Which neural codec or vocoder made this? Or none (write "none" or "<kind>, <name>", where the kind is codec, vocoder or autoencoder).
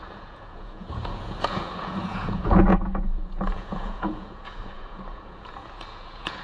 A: vocoder, Vocos